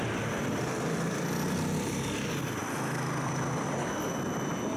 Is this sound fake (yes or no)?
no